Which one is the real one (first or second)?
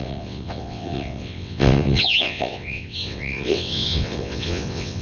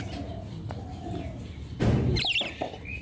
second